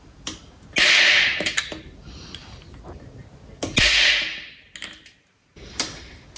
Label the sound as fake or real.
real